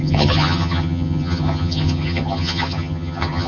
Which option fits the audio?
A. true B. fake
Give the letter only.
B